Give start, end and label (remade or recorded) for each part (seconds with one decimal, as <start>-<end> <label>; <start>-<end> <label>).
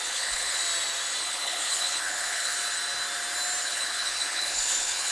0.0-0.6 remade; 0.6-1.2 recorded; 1.2-2.5 remade; 2.5-3.6 recorded; 3.6-5.1 remade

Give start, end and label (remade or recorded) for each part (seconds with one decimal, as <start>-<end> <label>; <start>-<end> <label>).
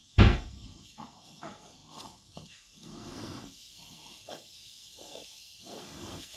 0.0-6.4 remade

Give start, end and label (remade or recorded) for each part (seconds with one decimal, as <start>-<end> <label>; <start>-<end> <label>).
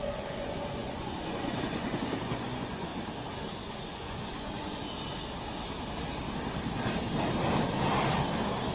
0.0-2.9 remade; 2.9-3.6 recorded; 3.6-4.8 remade; 4.8-8.7 recorded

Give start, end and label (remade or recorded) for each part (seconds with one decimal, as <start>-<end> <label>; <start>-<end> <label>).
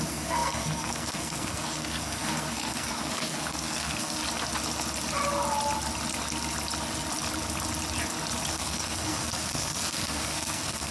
0.0-4.2 remade; 4.2-8.5 recorded; 8.5-10.9 remade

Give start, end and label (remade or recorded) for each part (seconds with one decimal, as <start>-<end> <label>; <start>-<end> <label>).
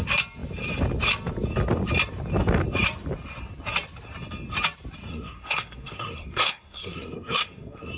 0.0-5.1 recorded; 5.1-8.0 remade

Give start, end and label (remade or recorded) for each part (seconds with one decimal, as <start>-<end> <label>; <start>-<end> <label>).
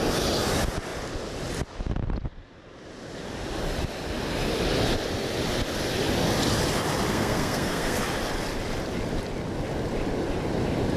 0.0-7.1 recorded; 7.1-8.0 remade; 8.0-11.0 recorded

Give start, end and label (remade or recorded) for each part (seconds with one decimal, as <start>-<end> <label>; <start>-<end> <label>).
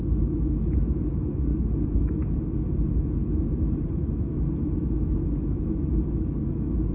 0.0-6.9 remade